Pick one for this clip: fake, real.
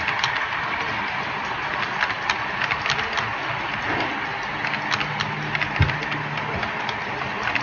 real